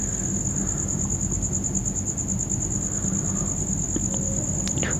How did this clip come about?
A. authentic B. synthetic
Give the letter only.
A